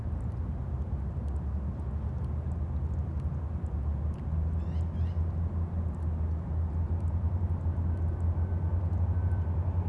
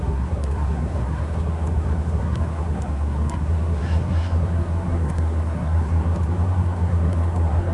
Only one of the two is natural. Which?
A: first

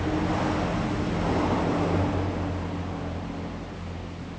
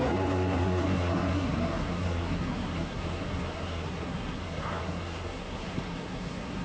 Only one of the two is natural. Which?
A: first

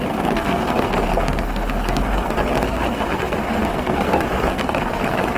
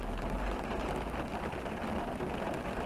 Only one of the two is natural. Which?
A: second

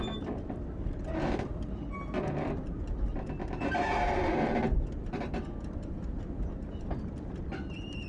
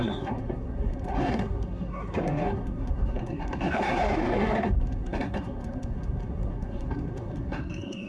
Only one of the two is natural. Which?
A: first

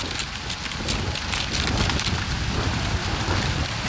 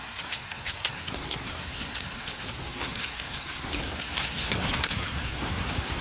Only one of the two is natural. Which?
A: first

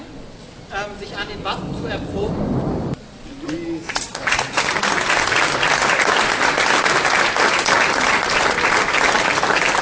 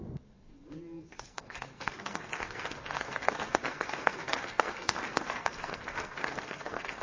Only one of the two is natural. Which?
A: first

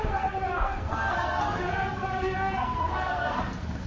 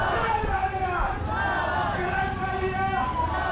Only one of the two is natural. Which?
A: second